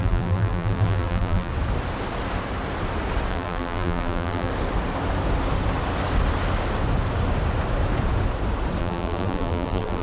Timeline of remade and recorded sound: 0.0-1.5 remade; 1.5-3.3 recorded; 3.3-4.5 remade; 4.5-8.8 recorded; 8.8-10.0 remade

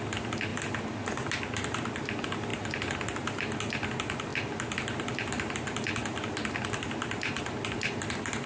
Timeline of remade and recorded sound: 0.0-2.5 recorded; 2.5-3.0 remade; 3.0-8.5 recorded

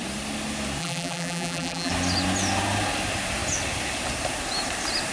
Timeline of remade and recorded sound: 0.0-0.8 recorded; 0.8-1.9 remade; 1.9-5.1 recorded

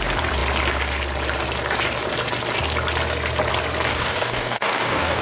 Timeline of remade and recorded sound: 0.0-3.9 recorded; 3.9-5.2 remade

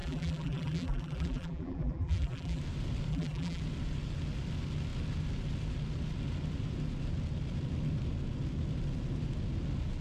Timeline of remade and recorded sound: 0.0-2.6 remade; 2.6-3.1 recorded; 3.1-3.6 remade; 3.6-10.0 recorded